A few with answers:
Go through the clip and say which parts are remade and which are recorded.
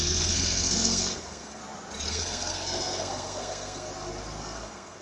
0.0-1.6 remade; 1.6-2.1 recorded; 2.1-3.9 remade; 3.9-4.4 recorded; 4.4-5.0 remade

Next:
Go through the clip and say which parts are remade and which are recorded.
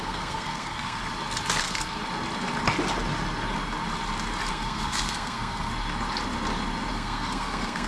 0.0-1.0 remade; 1.0-1.6 recorded; 1.6-2.0 remade; 2.0-4.5 recorded; 4.5-5.7 remade; 5.7-6.9 recorded; 6.9-7.9 remade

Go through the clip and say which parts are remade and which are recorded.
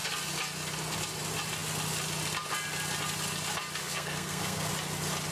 0.0-3.8 recorded; 3.8-4.7 remade; 4.7-5.3 recorded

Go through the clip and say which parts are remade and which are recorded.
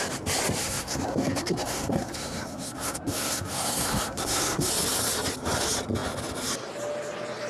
0.0-0.6 recorded; 0.6-4.7 remade; 4.7-7.5 recorded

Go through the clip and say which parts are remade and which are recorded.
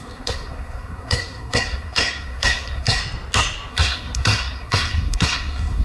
0.0-3.0 remade; 3.0-3.7 recorded; 3.7-5.8 remade